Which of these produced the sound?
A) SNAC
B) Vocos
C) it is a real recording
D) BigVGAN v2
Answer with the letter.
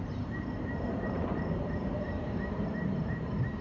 D